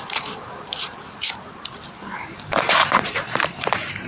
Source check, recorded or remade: remade